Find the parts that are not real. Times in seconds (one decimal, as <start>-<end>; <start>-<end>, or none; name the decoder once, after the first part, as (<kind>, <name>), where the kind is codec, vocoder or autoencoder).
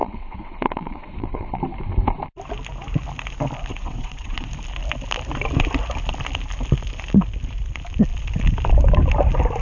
0.0-1.6 (vocoder, WaveNeXt); 3.7-4.5